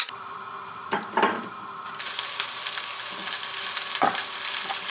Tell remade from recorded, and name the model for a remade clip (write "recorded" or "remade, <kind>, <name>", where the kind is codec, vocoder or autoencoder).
recorded